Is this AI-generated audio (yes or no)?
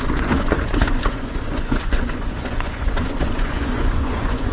yes